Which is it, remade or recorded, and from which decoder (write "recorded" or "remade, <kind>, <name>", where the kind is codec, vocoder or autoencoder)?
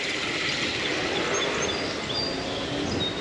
recorded